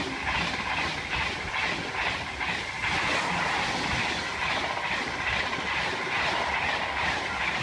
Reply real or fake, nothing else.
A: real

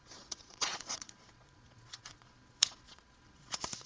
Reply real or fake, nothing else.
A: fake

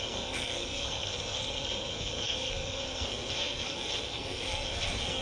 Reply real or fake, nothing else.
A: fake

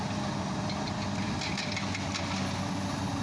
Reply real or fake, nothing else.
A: real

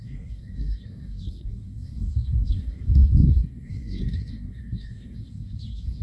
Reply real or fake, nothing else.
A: fake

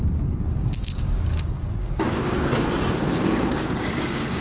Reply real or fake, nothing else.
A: fake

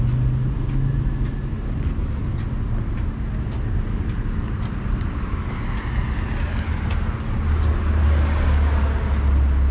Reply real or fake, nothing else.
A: real